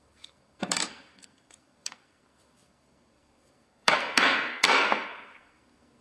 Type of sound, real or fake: fake